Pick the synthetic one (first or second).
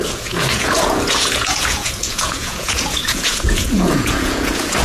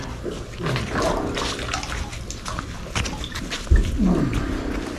first